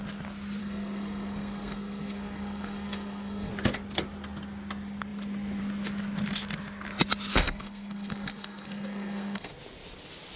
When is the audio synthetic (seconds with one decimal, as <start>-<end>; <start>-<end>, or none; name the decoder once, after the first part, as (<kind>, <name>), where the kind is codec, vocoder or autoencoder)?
0.6-3.5 (codec, SNAC); 7.3-9.5